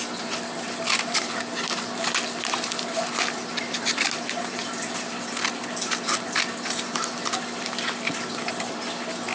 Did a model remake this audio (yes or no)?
no